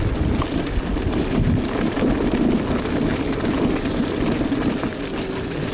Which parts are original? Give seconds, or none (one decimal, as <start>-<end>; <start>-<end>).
0.0-5.7